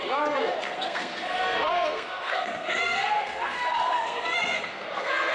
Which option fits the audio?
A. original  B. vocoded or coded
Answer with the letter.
B